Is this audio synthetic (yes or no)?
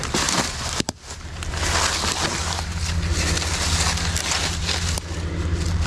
no